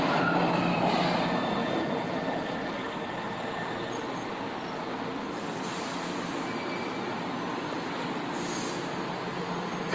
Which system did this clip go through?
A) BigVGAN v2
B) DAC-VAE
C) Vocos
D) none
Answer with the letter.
D